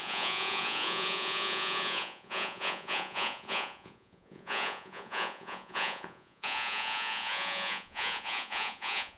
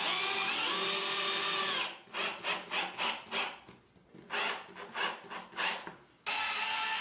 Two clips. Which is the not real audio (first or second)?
first